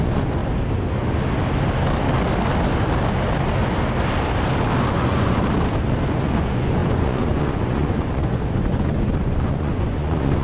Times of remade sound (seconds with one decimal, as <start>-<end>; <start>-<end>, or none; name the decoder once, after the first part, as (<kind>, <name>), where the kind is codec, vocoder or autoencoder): 0.0-0.4 (vocoder, Vocos); 4.9-5.4; 6.1-10.4